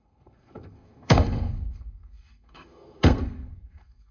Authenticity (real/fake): fake